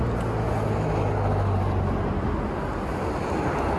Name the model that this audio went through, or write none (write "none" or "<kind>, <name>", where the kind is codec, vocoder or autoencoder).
none